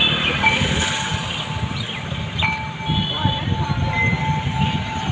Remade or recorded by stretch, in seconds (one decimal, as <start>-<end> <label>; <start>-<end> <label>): 0.0-5.1 recorded